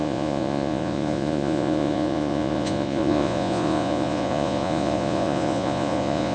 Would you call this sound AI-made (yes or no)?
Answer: yes